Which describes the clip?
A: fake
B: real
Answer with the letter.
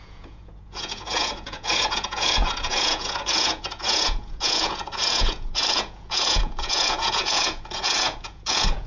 A